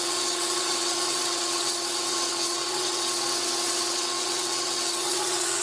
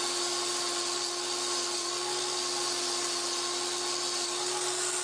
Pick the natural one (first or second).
second